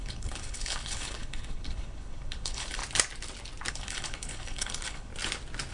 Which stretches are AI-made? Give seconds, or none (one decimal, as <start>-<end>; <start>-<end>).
0.0-2.8; 3.7-5.1